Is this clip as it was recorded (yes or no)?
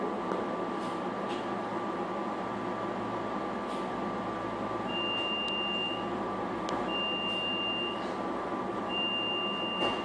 yes